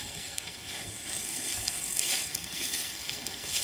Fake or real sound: fake